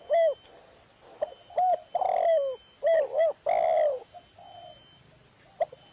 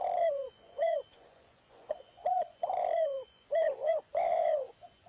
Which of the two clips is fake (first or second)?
second